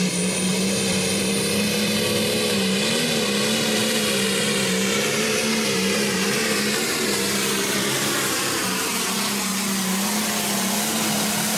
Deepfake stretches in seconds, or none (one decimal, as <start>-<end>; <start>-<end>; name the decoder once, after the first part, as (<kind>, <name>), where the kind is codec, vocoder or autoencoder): 0.5-1.3 (vocoder, BigVGAN v2); 3.8-9.0